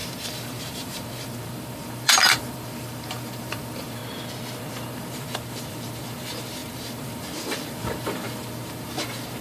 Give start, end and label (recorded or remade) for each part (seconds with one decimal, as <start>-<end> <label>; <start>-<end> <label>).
0.0-4.0 remade; 4.0-4.6 recorded; 4.6-9.4 remade